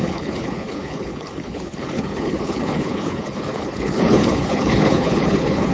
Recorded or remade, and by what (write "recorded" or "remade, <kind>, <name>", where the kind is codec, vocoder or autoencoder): remade, codec, HILCodec